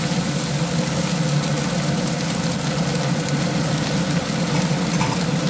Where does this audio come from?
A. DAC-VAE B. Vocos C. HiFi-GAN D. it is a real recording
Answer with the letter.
D